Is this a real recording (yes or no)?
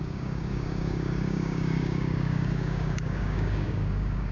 no